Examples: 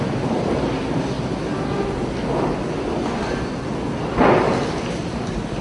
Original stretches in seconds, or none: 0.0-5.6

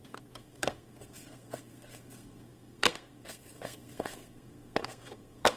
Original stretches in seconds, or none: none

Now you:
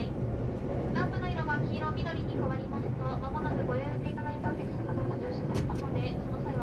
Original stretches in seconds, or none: 0.0-3.9; 5.8-6.6

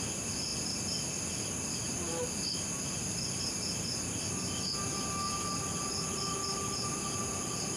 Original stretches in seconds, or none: 0.0-7.8